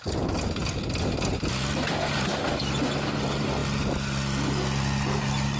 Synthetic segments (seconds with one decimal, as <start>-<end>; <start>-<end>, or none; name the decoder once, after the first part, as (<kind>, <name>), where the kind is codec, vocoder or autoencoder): none